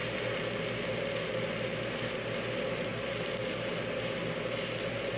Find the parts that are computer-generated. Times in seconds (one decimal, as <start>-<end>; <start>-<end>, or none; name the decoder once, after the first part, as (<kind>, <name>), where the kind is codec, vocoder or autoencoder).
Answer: none